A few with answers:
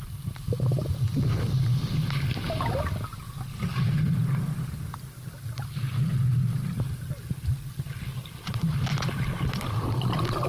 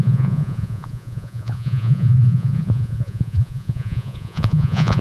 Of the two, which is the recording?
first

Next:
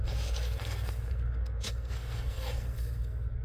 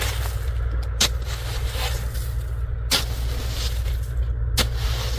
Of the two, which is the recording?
second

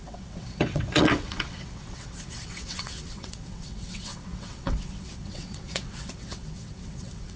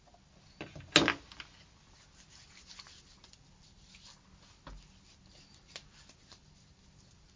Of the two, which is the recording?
second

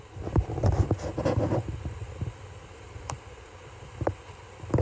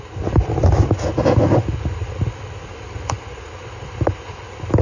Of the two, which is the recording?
second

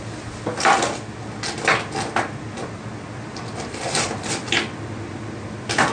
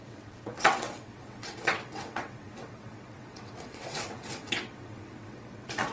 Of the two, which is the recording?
first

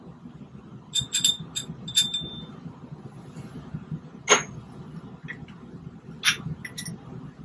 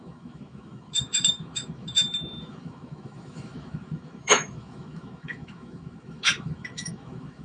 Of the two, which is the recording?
first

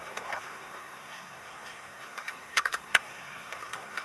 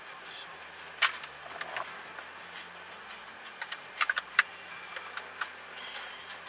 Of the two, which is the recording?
second